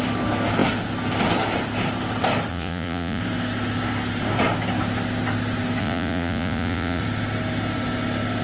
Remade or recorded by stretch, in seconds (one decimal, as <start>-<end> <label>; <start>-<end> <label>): 0.0-2.5 recorded; 2.5-3.2 remade; 3.2-5.8 recorded; 5.8-7.0 remade; 7.0-8.4 recorded